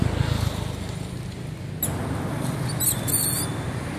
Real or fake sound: real